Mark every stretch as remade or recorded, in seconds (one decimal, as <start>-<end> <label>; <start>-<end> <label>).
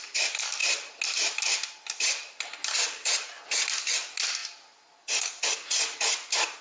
0.0-6.6 recorded